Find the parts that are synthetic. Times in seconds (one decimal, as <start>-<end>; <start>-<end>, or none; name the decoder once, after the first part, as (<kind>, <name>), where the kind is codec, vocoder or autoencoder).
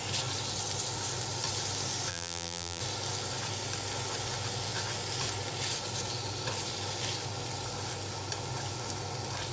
2.1-2.8 (vocoder, BigVGAN v2)